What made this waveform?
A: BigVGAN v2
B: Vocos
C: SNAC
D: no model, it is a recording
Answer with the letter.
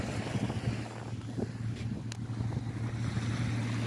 D